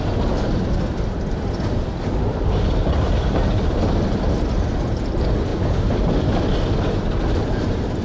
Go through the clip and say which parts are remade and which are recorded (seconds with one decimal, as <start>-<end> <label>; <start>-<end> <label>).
0.0-5.5 remade; 5.5-6.2 recorded; 6.2-8.0 remade